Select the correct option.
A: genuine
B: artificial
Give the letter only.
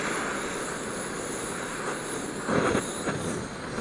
A